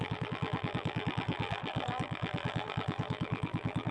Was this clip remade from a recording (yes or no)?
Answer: yes